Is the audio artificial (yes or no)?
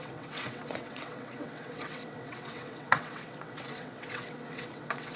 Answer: yes